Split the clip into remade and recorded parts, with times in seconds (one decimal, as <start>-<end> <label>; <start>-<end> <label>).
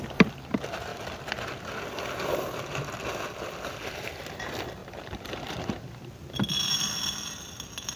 0.0-4.8 recorded; 4.8-5.8 remade; 5.8-8.0 recorded